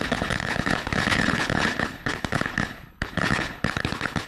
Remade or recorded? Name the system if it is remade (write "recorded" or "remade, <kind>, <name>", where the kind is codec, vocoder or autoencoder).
remade, codec, HILCodec